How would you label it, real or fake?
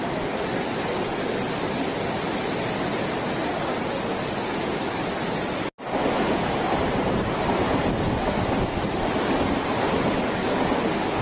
real